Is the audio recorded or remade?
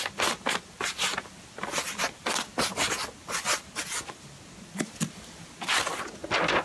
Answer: recorded